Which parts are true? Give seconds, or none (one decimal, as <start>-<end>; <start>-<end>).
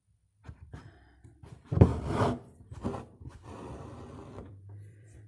1.9-3.2